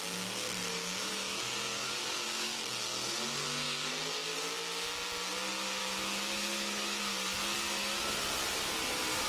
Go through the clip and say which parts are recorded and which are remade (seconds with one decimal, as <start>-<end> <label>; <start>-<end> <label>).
0.0-0.7 recorded; 0.7-2.6 remade; 2.6-5.8 recorded; 5.8-7.0 remade; 7.0-9.3 recorded